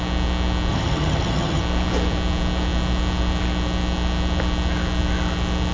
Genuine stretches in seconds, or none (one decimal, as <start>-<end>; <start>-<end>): 0.0-0.7; 1.6-5.7